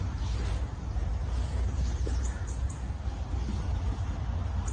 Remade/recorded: recorded